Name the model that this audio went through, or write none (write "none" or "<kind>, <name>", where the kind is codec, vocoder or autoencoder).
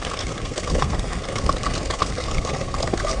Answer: codec, SNAC